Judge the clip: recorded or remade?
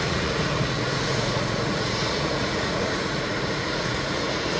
remade